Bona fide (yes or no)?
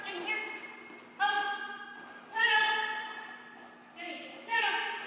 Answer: yes